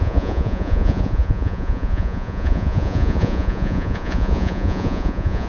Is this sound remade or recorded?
remade